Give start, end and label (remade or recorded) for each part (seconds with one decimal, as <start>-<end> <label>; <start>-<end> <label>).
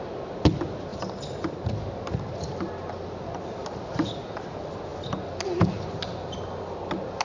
0.0-7.2 recorded